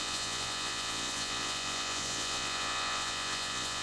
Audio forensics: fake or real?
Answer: fake